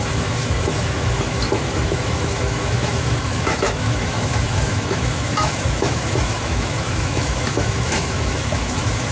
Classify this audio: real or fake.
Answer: fake